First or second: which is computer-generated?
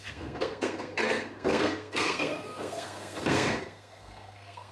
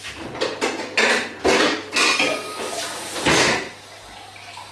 first